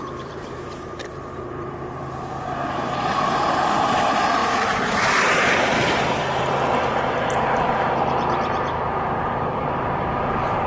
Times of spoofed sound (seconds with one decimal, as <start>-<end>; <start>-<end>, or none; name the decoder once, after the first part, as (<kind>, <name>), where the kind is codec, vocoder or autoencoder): 0.0-4.4 (vocoder, BigVGAN v2); 7.0-10.7